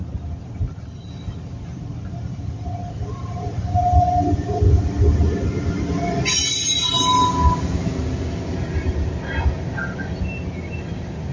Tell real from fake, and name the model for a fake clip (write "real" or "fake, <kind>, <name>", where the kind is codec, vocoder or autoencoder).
real